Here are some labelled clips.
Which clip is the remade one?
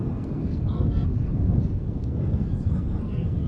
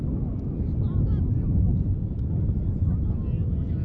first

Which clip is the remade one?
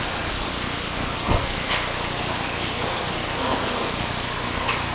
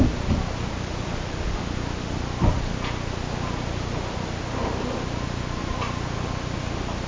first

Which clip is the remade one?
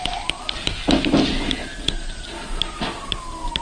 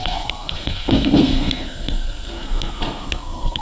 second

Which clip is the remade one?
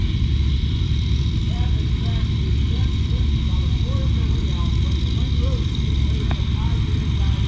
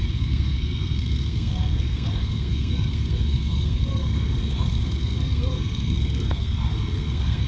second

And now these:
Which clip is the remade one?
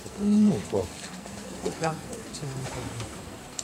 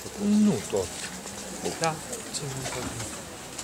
first